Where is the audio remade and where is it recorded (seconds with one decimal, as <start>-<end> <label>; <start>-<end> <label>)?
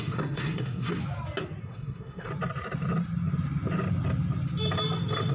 0.0-1.0 remade; 1.0-1.6 recorded; 1.6-2.3 remade; 2.3-5.3 recorded